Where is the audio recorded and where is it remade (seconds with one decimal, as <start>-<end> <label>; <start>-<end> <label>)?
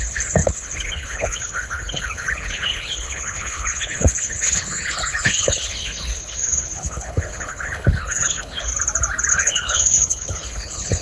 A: 0.0-8.7 remade; 8.7-9.3 recorded; 9.3-11.0 remade